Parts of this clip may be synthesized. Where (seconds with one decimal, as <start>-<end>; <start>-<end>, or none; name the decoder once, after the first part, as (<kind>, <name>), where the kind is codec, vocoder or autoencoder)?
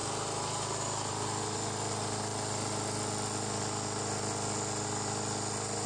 none